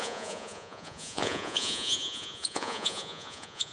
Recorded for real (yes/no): no